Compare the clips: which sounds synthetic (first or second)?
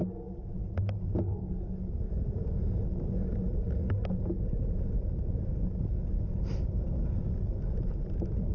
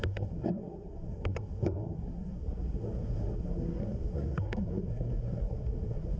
second